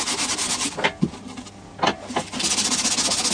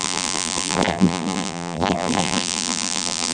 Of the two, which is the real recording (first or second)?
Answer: first